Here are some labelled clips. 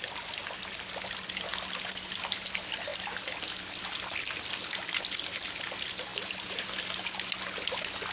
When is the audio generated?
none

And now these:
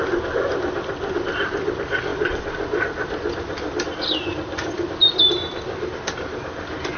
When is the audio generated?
2.1-3.8 (vocoder, BigVGAN v2); 4.3-4.9

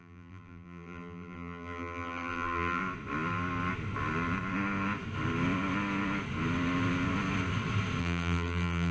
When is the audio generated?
0.0-2.8 (vocoder, BigVGAN v2); 8.0-8.9